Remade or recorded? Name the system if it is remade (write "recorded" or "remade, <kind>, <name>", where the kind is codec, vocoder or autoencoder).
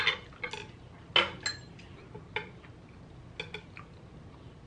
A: recorded